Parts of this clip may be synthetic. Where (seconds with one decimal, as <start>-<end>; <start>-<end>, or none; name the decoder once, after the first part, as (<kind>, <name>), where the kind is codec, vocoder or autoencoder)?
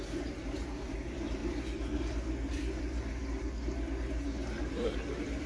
0.0-1.4 (vocoder, BigVGAN v2); 2.8-3.2; 4.6-5.5